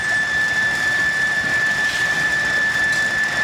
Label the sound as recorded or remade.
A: recorded